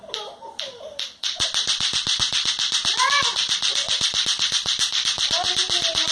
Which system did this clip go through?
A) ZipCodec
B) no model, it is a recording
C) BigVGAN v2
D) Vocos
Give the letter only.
C